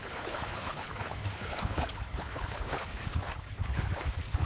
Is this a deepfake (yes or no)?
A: yes